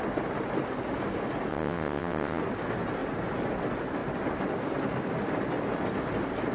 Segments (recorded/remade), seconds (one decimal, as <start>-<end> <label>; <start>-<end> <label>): 0.0-1.5 recorded; 1.5-2.4 remade; 2.4-6.5 recorded